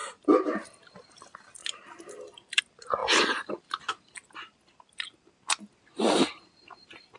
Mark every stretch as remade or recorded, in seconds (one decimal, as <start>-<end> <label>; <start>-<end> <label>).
0.0-1.2 remade; 1.2-1.6 recorded; 1.6-2.6 remade; 2.6-3.0 recorded; 3.0-4.3 remade; 4.3-7.2 recorded